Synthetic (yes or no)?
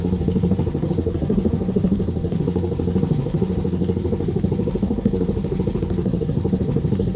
yes